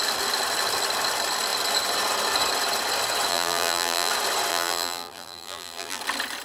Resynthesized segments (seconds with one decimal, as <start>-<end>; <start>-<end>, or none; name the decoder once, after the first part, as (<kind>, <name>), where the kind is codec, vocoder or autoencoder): 3.3-4.1 (vocoder, BigVGAN v2); 4.5-6.0